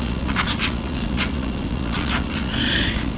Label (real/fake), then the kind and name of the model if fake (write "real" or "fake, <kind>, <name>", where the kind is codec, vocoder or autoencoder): fake, vocoder, Vocos